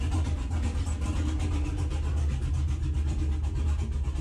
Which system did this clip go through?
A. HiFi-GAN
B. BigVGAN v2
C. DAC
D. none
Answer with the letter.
D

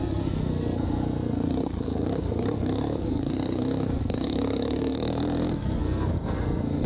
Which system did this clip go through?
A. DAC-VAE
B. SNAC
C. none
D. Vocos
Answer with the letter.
B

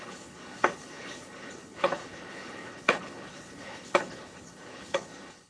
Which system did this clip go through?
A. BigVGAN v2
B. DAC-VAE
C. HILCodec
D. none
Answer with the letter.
C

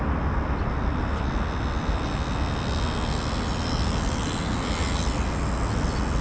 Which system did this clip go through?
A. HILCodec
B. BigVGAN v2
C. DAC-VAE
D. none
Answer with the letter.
D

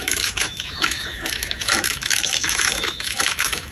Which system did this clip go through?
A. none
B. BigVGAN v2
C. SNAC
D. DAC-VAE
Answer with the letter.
D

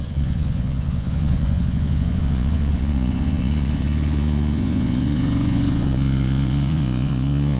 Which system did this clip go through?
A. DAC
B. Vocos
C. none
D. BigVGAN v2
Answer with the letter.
B